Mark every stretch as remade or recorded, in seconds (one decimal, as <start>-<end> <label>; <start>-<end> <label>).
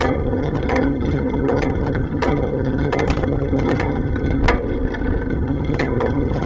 0.0-4.4 remade; 4.4-5.3 recorded; 5.3-6.5 remade